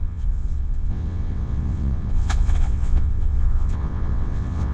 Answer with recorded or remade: remade